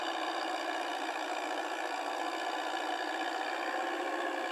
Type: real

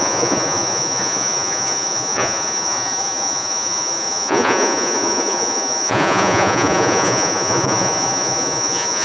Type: fake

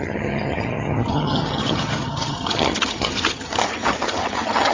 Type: fake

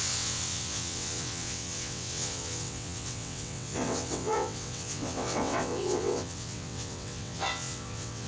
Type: fake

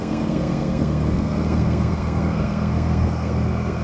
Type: fake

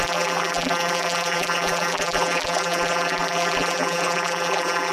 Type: fake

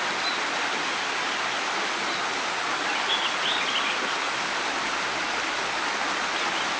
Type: real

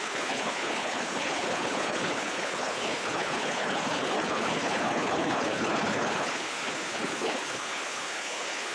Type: fake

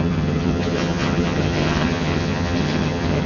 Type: fake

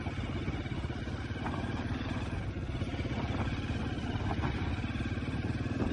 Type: real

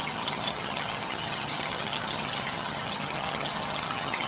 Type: fake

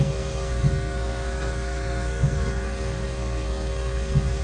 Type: fake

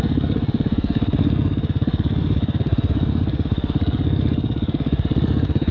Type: fake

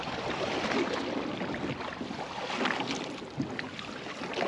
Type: real